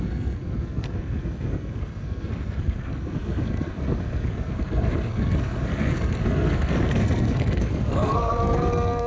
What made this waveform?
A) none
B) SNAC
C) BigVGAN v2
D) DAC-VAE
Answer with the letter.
B